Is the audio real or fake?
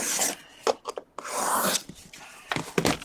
real